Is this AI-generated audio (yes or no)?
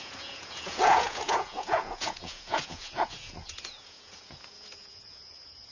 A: yes